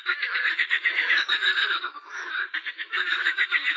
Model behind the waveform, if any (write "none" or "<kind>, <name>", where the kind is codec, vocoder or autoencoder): codec, DAC